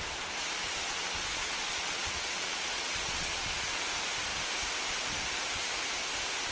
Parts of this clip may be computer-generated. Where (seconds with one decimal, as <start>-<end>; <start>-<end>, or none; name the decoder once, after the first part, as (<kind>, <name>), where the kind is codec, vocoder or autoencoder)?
0.8-3.8 (vocoder, Vocos)